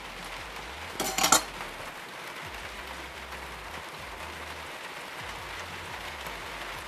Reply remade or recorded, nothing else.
recorded